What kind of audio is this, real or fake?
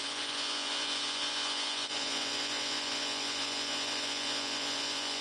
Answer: fake